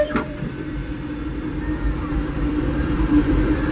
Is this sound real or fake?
fake